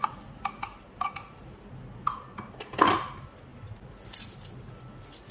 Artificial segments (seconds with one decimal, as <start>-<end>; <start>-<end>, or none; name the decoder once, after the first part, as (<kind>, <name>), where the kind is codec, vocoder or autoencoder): none